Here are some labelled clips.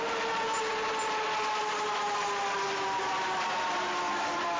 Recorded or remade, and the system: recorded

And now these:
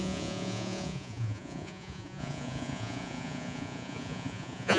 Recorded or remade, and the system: remade, vocoder, Vocos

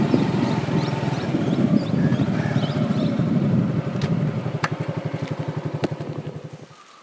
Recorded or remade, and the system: recorded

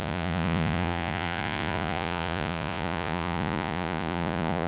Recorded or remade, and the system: remade, vocoder, Vocos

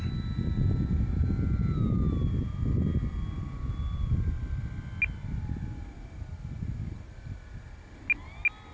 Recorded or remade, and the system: recorded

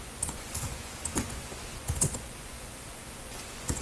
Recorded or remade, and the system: remade, vocoder, Vocos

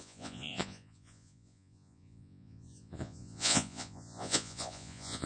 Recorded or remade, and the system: remade, vocoder, Vocos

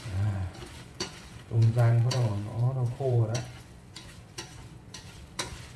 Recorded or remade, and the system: remade, vocoder, Vocos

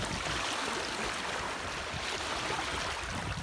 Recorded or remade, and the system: recorded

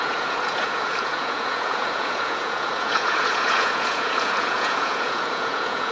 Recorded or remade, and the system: remade, vocoder, Vocos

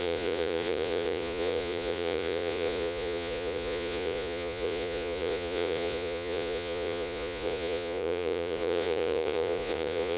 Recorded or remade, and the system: remade, vocoder, Vocos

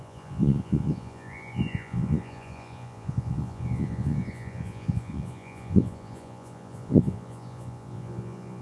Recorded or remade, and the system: remade, vocoder, Vocos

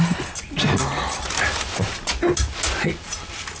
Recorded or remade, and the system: recorded